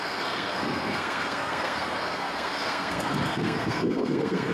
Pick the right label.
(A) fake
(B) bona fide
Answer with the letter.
A